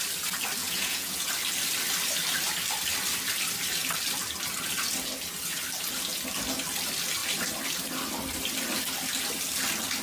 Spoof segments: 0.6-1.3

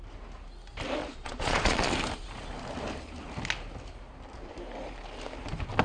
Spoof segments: 1.0-1.9

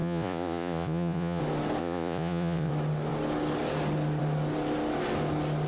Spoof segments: 0.0-1.4; 1.8-2.7